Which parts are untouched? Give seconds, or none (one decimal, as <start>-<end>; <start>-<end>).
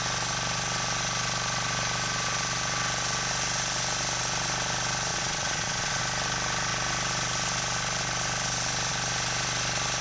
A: 0.0-5.1; 6.0-10.0